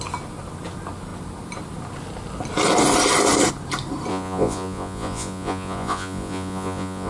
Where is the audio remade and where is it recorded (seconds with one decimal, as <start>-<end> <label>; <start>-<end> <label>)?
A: 0.0-4.1 recorded; 4.1-7.1 remade